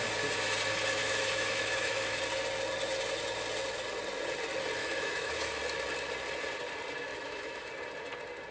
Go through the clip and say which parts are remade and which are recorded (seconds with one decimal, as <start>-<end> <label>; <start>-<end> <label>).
0.0-1.0 recorded; 1.0-2.2 remade; 2.2-4.8 recorded; 4.8-5.6 remade; 5.6-7.1 recorded; 7.1-7.7 remade; 7.7-8.5 recorded